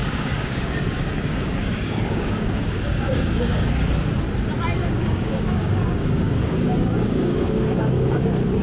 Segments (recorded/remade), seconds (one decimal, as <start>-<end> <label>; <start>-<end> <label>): 0.0-3.7 remade; 3.7-4.8 recorded; 4.8-8.2 remade; 8.2-8.6 recorded